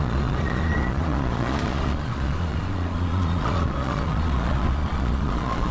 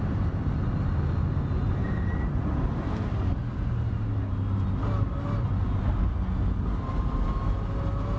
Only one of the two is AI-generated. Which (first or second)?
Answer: first